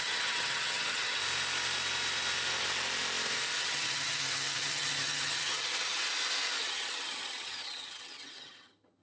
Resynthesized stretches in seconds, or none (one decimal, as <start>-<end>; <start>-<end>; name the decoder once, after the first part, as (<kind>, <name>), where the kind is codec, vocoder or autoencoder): 0.0-1.2 (vocoder, HiFi-GAN); 3.6-6.0; 6.6-9.0